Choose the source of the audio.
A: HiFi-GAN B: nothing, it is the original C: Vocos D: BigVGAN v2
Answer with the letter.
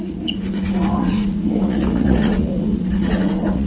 C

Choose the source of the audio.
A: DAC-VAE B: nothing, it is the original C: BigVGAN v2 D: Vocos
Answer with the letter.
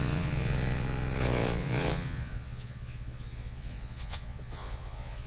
D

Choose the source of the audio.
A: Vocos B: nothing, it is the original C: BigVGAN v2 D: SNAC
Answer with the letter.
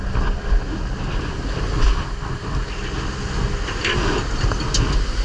B